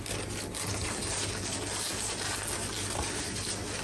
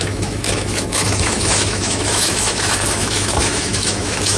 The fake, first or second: second